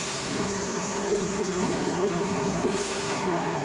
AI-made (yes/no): yes